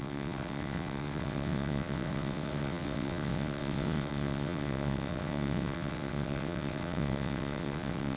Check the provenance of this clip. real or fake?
fake